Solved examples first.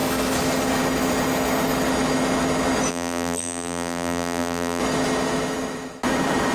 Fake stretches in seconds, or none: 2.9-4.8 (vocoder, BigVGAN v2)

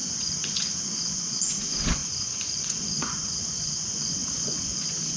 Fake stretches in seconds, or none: 0.0-5.2 (vocoder, Vocos)

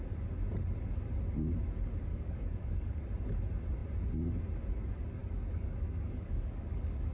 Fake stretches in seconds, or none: 2.1-3.0 (codec, DAC); 5.2-7.1

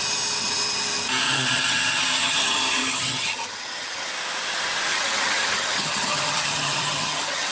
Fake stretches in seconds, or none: 1.2-4.1 (vocoder, HiFi-GAN); 4.9-7.5